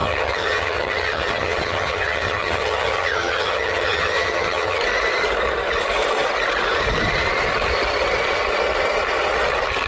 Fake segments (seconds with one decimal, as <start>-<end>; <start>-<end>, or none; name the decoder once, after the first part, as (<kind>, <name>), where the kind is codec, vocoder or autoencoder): 0.0-4.8 (vocoder, HiFi-GAN)